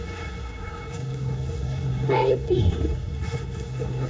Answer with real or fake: fake